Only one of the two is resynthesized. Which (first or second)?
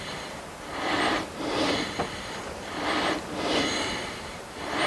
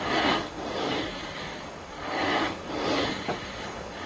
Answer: second